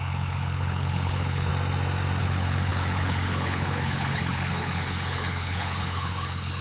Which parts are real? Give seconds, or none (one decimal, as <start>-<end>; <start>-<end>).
1.5-2.2